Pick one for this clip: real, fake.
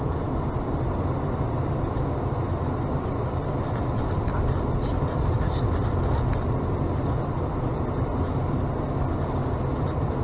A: real